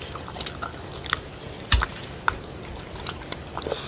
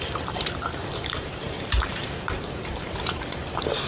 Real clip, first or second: first